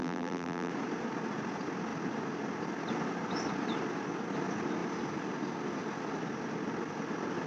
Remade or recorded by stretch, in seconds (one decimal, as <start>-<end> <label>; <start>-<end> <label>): 0.0-0.7 remade; 0.7-7.5 recorded